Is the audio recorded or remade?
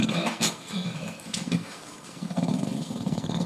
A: remade